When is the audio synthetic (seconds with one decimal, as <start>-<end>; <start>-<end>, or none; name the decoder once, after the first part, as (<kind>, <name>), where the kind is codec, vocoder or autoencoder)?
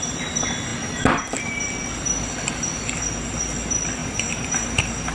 4.0-5.1 (vocoder, BigVGAN v2)